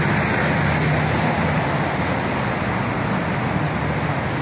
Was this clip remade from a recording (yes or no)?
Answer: no